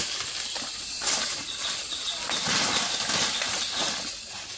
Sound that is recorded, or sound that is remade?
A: recorded